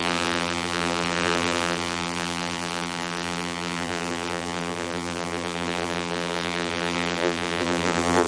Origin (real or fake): fake